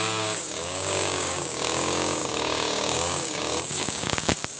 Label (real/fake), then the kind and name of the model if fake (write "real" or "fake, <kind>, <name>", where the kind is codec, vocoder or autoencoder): fake, codec, DAC